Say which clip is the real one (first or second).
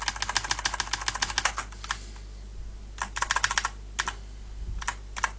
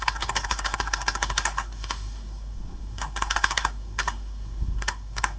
first